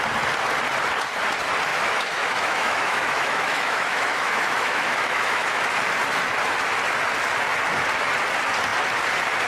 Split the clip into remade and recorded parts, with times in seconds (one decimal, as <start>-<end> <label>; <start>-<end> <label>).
0.0-1.7 recorded; 1.7-5.6 remade; 5.6-9.5 recorded